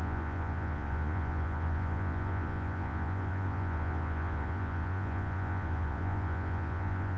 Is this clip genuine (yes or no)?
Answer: no